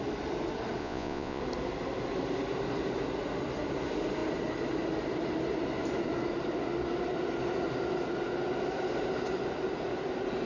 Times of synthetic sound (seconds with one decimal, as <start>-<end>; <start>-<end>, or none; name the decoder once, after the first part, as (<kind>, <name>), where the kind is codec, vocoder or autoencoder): 0.8-1.4 (vocoder, Vocos)